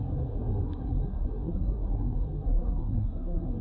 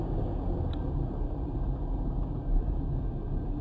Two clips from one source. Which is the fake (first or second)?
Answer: first